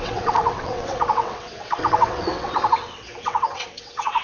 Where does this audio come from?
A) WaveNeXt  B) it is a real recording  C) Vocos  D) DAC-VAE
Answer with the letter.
A